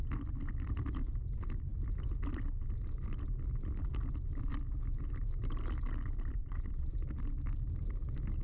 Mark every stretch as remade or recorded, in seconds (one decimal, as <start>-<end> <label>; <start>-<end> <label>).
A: 0.0-6.4 recorded; 6.4-6.9 remade; 6.9-8.4 recorded